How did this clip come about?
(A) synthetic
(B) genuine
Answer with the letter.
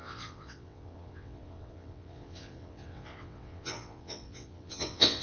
A